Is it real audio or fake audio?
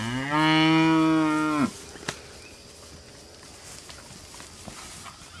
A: real